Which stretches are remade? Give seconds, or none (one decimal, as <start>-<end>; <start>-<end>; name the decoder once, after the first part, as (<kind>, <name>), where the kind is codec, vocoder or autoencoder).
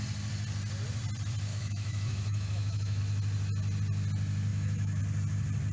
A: 1.5-3.0 (autoencoder, DAC-VAE); 4.5-5.0